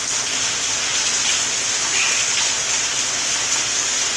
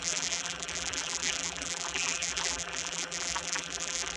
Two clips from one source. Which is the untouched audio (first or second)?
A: first